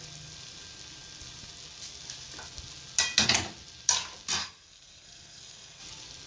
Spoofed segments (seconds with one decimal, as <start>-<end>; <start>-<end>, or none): 4.4-5.8